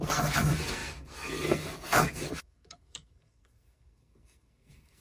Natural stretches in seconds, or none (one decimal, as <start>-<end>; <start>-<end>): none

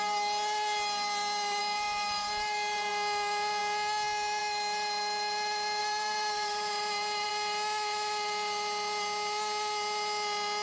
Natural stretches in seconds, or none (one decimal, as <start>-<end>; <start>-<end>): 0.0-1.6; 2.9-5.8; 7.3-10.6

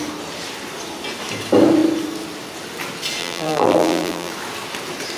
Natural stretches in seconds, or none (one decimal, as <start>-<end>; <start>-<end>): 0.0-3.2; 4.3-5.2

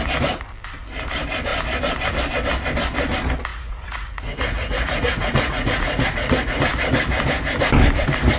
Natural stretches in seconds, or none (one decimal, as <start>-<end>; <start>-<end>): 0.0-3.5; 6.6-8.4

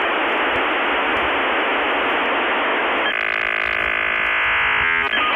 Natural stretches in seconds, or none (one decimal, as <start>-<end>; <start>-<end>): 0.0-5.4